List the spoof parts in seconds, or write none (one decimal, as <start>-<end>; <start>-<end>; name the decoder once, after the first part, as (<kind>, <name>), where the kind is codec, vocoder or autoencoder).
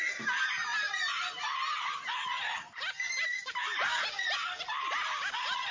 none